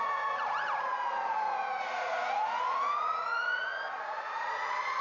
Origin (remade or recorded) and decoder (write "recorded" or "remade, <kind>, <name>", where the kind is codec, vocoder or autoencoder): remade, vocoder, Vocos